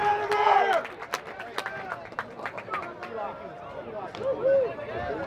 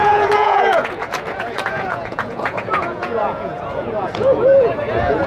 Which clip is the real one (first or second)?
first